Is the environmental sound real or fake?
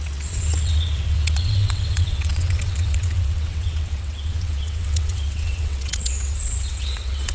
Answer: fake